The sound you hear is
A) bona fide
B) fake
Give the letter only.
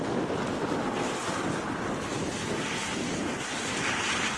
A